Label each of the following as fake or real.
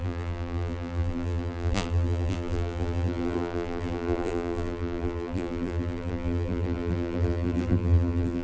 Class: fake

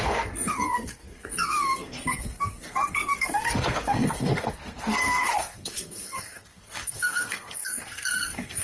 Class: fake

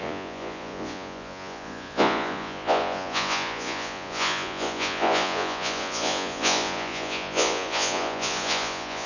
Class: fake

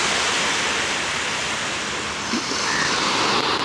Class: real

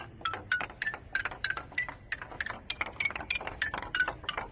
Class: real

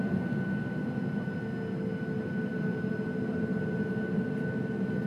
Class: real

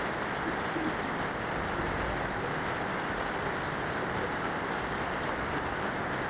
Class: real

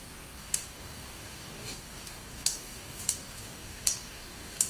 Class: fake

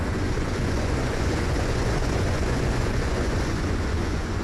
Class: fake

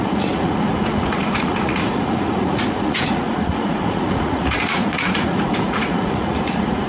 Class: fake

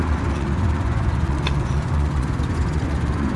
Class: fake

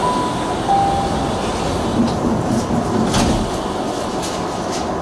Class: real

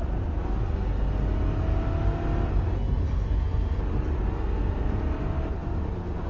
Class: real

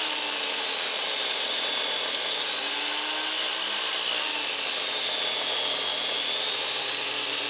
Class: real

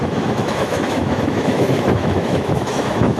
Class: fake